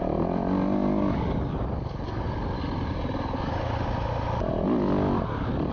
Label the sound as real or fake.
real